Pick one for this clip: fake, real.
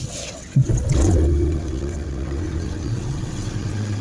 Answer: fake